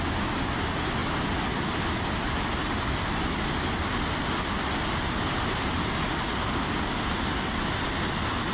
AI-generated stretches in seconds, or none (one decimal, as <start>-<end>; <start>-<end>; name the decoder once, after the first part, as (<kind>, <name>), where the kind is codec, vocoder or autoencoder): none